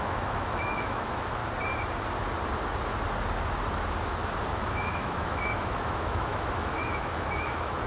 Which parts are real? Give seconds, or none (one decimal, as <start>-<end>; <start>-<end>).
1.4-4.5